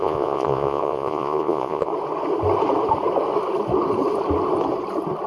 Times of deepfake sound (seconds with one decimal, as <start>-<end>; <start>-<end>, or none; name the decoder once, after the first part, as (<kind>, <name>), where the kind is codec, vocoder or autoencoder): 0.0-1.9 (vocoder, Vocos)